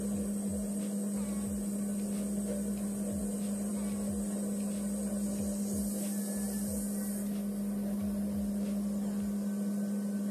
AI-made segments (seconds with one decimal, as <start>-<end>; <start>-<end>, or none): none